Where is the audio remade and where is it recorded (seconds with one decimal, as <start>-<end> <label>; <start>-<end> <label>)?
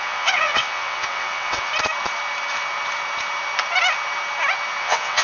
0.0-1.7 remade; 1.7-4.8 recorded; 4.8-5.2 remade